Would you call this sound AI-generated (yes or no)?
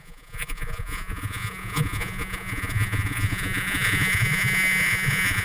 yes